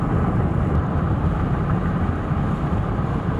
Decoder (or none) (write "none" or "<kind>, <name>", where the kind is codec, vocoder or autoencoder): vocoder, BigVGAN v2